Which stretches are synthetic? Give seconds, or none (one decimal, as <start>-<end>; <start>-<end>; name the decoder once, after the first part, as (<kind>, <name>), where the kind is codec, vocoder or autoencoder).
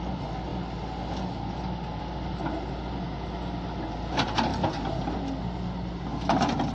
none